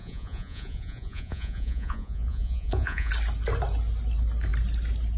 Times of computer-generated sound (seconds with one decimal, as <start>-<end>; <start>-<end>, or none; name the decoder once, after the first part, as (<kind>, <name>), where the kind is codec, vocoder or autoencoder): 0.0-3.1 (vocoder, Vocos)